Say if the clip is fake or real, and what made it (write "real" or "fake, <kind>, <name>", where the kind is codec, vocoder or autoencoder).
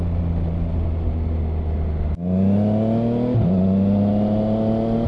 real